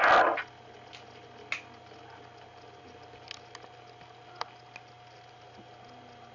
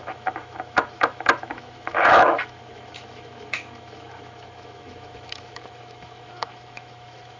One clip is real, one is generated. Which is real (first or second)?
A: first